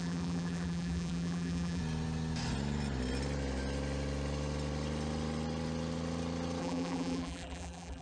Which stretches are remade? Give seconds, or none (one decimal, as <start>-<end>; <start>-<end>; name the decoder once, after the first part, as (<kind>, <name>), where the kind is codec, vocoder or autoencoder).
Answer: 0.0-1.8 (vocoder, BigVGAN v2); 6.6-8.0

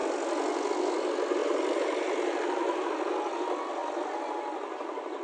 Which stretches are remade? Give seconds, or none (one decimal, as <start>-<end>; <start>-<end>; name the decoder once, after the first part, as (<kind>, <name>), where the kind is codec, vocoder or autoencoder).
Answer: 1.4-2.9 (vocoder, BigVGAN v2)

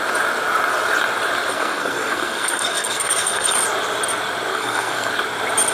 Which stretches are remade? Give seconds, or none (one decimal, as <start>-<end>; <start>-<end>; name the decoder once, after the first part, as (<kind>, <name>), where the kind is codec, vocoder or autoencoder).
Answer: 1.5-3.5 (codec, SNAC); 4.5-5.1